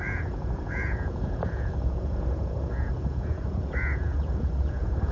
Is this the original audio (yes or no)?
no